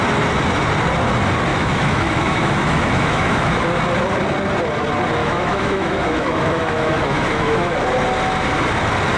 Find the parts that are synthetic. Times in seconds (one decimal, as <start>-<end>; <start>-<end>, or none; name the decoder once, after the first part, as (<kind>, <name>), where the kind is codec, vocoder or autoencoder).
1.5-3.6 (autoencoder, DAC-VAE); 5.2-7.8